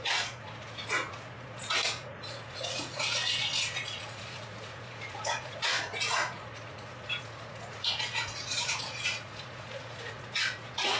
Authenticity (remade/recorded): remade